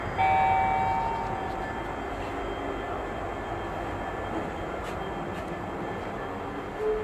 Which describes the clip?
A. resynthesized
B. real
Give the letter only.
B